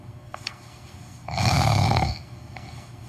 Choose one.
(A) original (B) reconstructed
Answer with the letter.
B